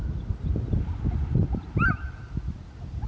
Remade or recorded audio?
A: recorded